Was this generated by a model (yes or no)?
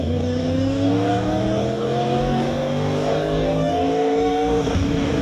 yes